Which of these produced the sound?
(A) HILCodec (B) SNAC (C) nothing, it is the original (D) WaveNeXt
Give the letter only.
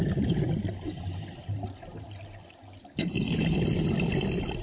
C